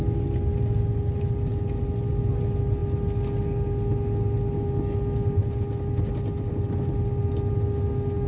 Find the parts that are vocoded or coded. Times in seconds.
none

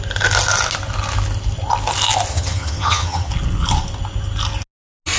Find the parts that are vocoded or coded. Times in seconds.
2.3-3.3 (vocoder, HiFi-GAN)

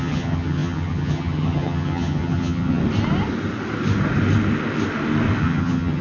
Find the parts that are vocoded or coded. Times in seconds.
0.0-2.8 (vocoder, HiFi-GAN); 5.4-6.0

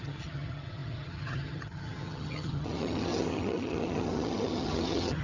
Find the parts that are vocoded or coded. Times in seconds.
0.0-5.2 (vocoder, HiFi-GAN)